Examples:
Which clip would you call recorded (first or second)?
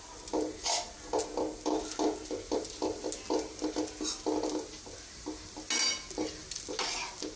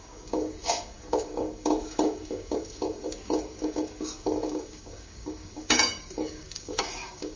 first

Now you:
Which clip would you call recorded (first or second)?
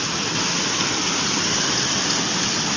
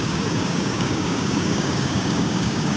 first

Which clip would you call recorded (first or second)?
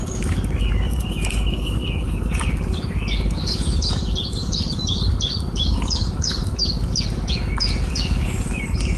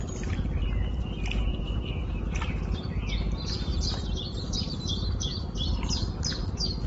second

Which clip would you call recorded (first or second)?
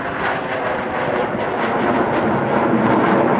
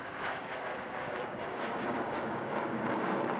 first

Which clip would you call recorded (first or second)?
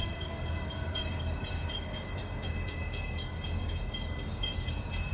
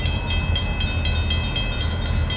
second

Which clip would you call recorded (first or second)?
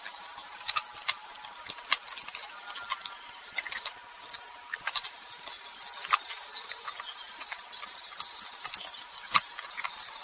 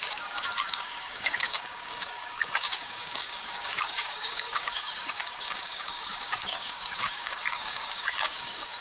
first